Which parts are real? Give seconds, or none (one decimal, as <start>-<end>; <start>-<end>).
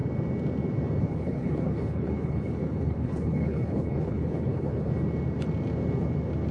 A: 0.0-1.0; 4.9-6.5